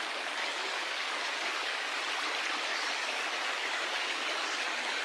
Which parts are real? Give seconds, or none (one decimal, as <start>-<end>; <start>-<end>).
0.0-0.4; 2.0-2.7